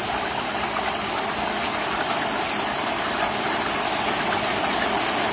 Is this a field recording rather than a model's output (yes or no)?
yes